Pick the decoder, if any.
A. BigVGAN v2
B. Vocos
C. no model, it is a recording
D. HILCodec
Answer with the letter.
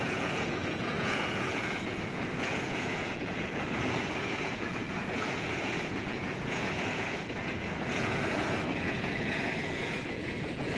B